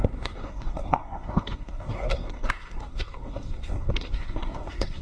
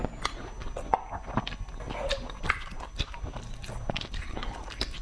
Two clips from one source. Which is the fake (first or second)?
first